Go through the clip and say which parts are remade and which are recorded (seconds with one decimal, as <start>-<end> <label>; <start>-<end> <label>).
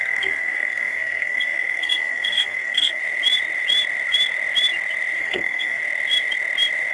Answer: 0.0-3.0 remade; 3.0-5.2 recorded; 5.2-5.8 remade; 5.8-6.9 recorded